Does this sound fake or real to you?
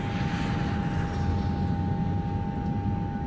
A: real